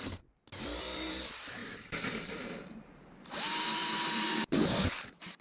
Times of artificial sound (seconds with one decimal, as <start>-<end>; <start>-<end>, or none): 1.6-4.8